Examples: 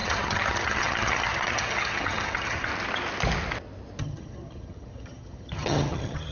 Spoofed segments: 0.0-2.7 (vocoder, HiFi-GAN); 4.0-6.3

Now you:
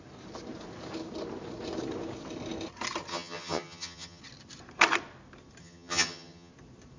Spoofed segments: 3.1-4.2 (vocoder, HiFi-GAN); 5.6-6.5

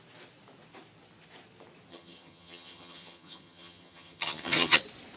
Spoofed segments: 1.9-4.8 (vocoder, HiFi-GAN)

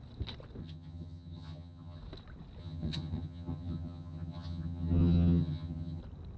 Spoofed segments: 0.6-2.0 (vocoder, HiFi-GAN); 2.6-6.0

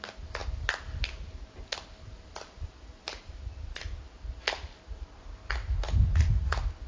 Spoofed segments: none

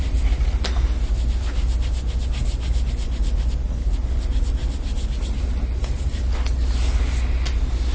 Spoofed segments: none

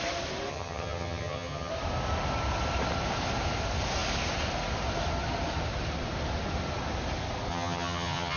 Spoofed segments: 0.5-1.7 (vocoder, HiFi-GAN); 7.5-8.4